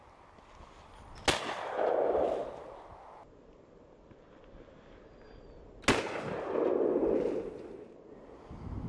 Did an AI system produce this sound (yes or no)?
no